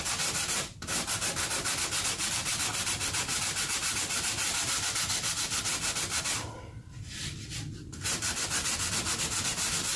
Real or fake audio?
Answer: fake